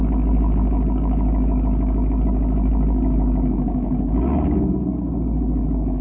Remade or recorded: remade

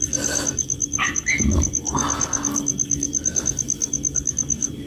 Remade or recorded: remade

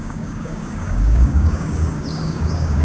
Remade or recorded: remade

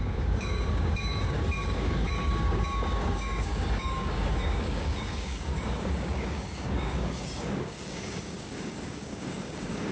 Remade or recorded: remade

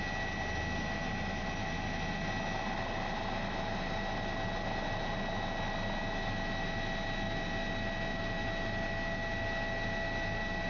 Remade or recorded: recorded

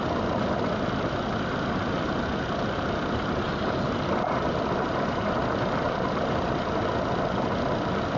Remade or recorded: recorded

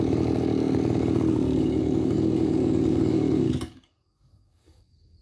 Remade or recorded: remade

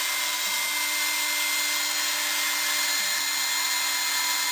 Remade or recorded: recorded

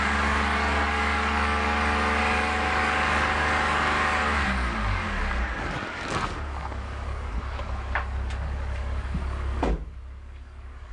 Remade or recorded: remade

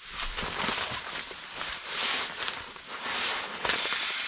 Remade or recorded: recorded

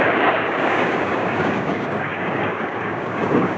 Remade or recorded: remade